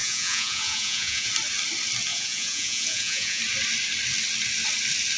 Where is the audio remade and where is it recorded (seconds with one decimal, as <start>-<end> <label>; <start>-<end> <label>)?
0.0-1.3 remade; 1.3-2.1 recorded; 2.1-3.4 remade; 3.4-5.2 recorded